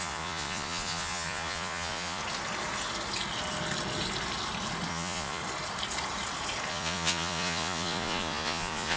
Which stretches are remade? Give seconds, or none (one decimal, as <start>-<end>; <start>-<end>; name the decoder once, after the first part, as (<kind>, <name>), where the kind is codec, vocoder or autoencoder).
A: 0.0-2.2 (vocoder, Vocos); 4.9-5.4; 6.7-9.0